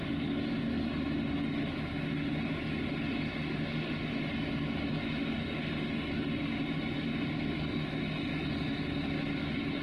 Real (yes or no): yes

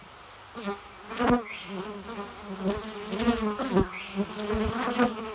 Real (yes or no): yes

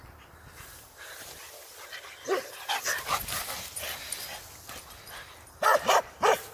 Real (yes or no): yes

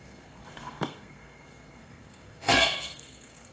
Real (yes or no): no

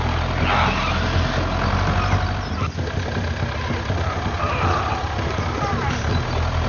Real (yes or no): yes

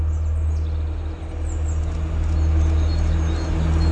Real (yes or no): yes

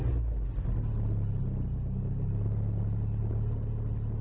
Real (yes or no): yes